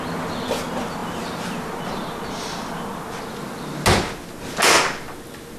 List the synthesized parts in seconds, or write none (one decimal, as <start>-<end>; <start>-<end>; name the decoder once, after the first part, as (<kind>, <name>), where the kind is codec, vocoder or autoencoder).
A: none